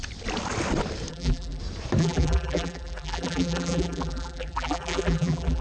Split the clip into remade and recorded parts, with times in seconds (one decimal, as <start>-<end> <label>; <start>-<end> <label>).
0.0-1.1 recorded; 1.1-1.6 remade; 1.6-2.0 recorded; 2.0-5.6 remade